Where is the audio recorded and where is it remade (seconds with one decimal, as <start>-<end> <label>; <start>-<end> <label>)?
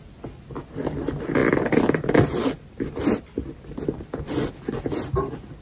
0.0-1.4 recorded; 1.4-4.6 remade; 4.6-5.6 recorded